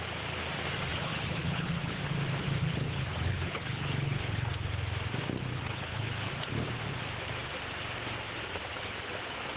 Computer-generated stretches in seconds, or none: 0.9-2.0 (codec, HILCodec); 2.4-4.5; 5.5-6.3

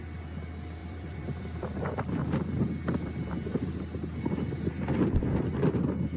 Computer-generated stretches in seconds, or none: 0.8-3.8 (vocoder, BigVGAN v2)

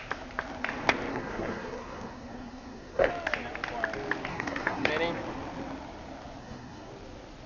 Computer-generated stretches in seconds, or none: 1.1-3.1 (codec, SNAC); 4.3-4.9; 6.4-6.9

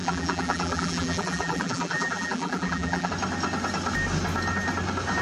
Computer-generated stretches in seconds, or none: 0.0-3.1 (vocoder, BigVGAN v2)

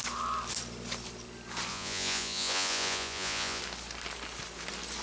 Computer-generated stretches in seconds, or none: 1.7-3.6 (vocoder, Vocos)

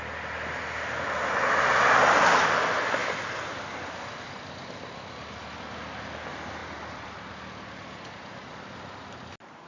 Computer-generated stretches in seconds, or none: 3.0-4.5 (vocoder, BigVGAN v2); 6.6-7.3